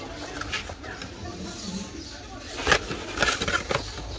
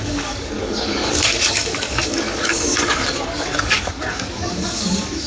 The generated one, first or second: second